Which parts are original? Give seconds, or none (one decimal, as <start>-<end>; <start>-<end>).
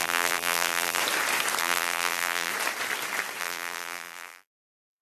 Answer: 1.0-1.6; 2.5-3.4